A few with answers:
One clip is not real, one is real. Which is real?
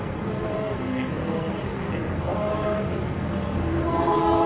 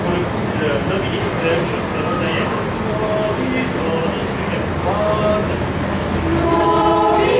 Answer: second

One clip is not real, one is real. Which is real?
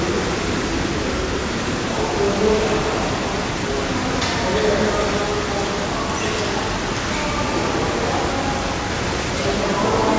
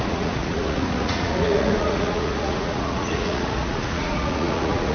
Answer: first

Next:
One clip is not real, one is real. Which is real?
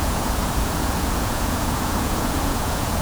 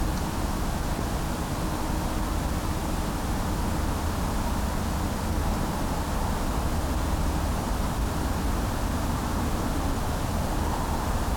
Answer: second